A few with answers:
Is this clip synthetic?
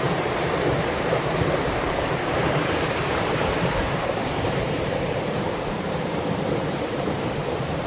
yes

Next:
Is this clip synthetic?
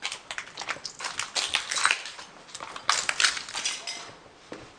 yes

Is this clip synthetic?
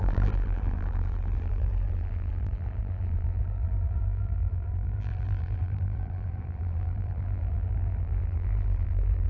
yes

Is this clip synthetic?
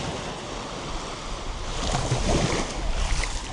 no